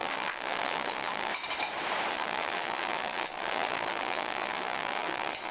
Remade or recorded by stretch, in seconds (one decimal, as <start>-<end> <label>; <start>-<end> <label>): 0.0-1.3 remade; 1.3-2.1 recorded; 2.1-5.5 remade